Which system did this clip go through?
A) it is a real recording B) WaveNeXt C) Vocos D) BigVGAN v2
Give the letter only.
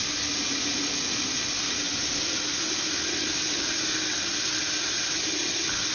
A